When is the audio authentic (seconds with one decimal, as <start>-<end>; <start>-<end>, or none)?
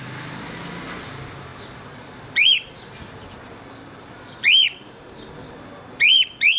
0.0-6.6